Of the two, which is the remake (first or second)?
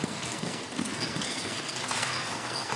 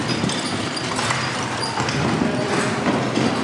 first